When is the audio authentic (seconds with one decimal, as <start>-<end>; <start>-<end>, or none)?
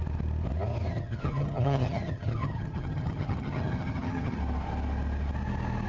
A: 0.0-0.9; 4.4-5.9